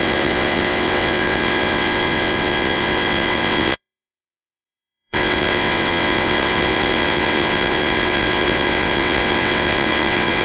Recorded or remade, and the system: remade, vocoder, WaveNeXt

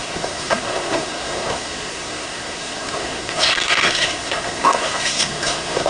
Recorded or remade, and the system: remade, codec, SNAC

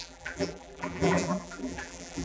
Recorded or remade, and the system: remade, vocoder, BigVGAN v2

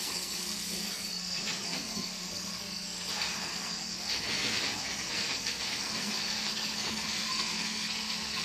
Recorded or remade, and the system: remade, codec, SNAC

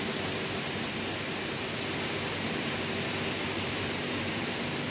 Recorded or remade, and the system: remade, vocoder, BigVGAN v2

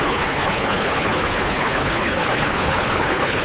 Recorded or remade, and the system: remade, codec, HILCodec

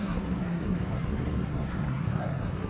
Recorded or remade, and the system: remade, codec, SNAC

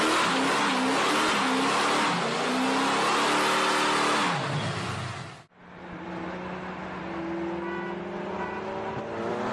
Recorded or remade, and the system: recorded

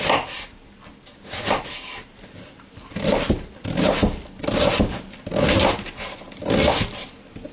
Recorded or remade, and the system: recorded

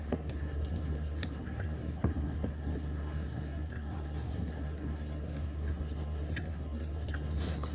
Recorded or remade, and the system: remade, codec, SNAC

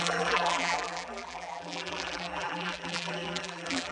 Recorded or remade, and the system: remade, vocoder, BigVGAN v2